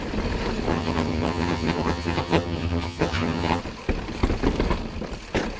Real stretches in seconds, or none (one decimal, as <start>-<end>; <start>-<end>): 0.0-0.7; 3.6-5.6